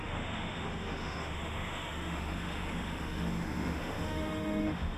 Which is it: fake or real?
fake